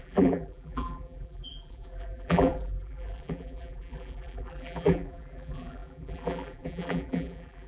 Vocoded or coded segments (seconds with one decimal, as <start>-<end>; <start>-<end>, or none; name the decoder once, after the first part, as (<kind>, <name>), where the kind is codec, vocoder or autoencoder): 0.0-7.7 (vocoder, BigVGAN v2)